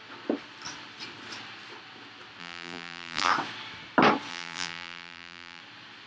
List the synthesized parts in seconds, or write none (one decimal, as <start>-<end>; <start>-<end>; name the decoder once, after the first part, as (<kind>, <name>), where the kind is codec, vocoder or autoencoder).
2.4-3.3 (vocoder, BigVGAN v2); 4.3-5.6